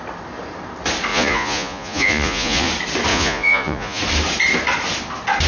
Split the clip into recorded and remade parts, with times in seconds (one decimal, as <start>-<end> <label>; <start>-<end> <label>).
0.0-1.1 recorded; 1.1-2.7 remade; 2.7-3.1 recorded; 3.1-4.0 remade; 4.0-5.5 recorded